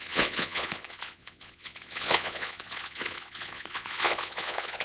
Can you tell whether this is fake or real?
fake